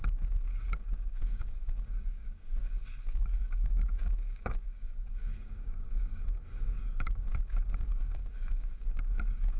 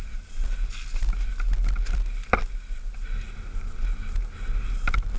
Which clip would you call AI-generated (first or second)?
first